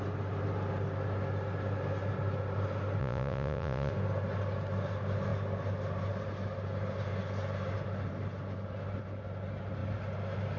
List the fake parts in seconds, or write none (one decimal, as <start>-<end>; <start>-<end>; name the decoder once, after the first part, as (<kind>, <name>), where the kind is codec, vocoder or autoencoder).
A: 3.0-3.9 (vocoder, Vocos)